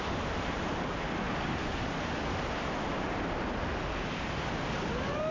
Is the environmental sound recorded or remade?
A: recorded